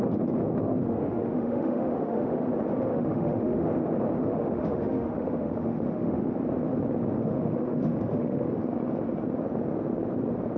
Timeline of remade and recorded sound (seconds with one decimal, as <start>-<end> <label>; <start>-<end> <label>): 0.0-0.8 recorded; 0.8-2.5 remade; 2.5-2.9 recorded; 2.9-3.7 remade; 3.7-4.2 recorded; 4.2-6.3 remade; 6.3-7.2 recorded; 7.2-8.5 remade; 8.5-10.6 recorded